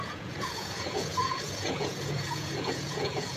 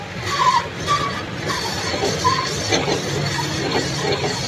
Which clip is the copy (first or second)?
first